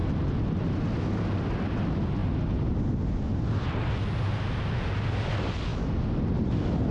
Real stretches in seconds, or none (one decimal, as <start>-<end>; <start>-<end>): 0.0-6.9